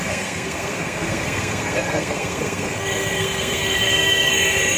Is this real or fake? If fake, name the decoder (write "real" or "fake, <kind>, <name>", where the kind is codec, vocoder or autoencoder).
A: fake, codec, SNAC